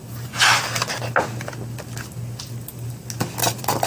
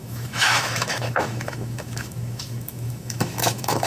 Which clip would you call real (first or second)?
first